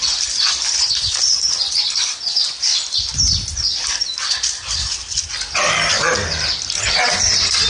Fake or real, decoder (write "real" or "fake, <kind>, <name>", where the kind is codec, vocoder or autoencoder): fake, vocoder, BigVGAN v2